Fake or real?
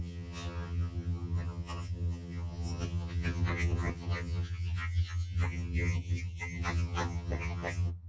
fake